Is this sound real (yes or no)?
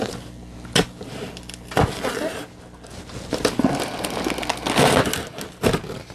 yes